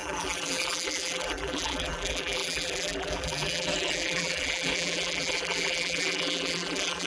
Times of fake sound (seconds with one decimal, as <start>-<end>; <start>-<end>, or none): 0.0-7.1